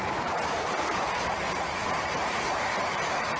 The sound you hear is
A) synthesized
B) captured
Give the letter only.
A